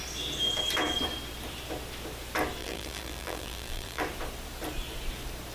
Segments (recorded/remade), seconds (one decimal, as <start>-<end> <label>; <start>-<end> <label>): 0.0-2.6 recorded; 2.6-4.0 remade; 4.0-5.5 recorded